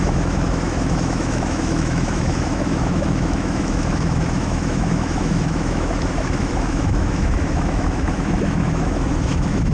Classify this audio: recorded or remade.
remade